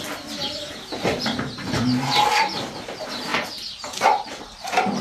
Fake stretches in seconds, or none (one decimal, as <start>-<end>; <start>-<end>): none